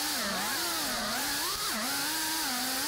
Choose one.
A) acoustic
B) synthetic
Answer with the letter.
A